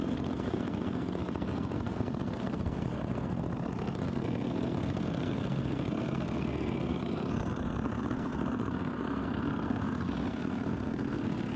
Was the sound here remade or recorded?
remade